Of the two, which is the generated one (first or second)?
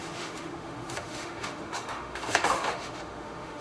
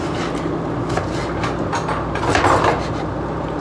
first